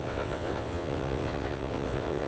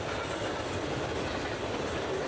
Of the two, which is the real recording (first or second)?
second